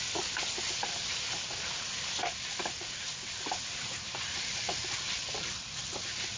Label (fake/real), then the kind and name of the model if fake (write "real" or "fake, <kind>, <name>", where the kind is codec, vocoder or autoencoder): real